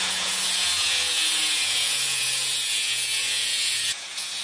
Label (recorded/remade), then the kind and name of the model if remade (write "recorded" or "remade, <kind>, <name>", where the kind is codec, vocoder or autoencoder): remade, vocoder, Vocos